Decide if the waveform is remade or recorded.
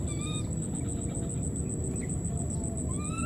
recorded